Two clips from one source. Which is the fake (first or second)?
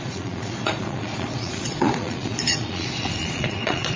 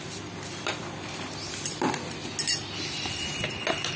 first